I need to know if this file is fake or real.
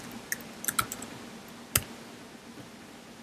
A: real